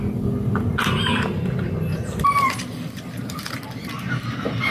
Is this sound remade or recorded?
remade